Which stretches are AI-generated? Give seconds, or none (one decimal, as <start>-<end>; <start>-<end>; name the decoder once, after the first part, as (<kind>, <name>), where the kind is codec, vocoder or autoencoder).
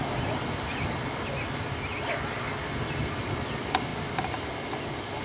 none